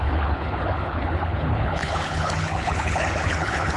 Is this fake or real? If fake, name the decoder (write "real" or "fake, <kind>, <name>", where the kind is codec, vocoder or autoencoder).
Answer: fake, codec, HILCodec